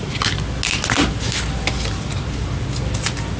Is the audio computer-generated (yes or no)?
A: no